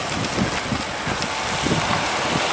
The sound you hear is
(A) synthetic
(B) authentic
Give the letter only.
B